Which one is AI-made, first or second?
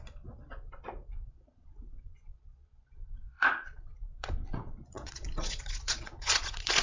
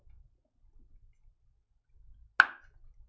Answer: first